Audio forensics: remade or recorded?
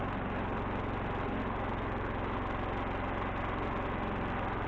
recorded